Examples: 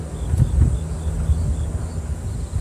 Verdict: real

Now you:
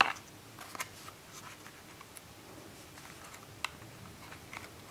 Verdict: real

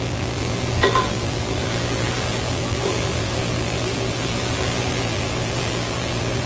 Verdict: fake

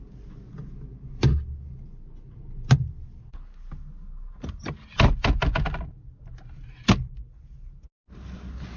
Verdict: real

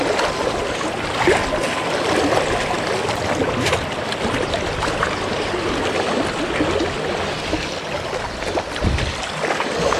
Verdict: real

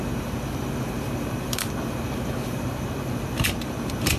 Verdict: fake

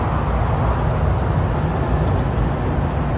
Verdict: real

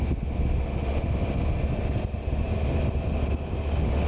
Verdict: real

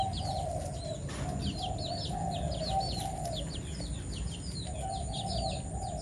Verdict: real